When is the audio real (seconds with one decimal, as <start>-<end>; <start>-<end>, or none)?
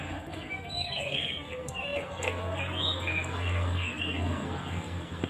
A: none